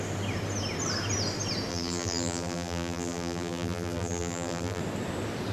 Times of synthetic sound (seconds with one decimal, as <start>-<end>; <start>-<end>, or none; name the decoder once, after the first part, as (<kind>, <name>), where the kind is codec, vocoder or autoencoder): 1.7-4.8 (vocoder, BigVGAN v2)

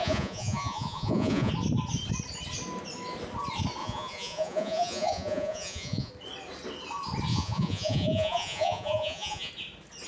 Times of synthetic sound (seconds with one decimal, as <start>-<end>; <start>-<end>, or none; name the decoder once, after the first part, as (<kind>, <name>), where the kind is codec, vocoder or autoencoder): 0.0-1.5 (vocoder, Vocos); 3.8-6.1; 7.3-9.5